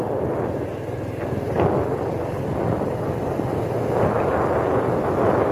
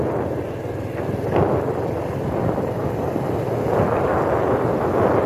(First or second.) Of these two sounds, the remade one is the second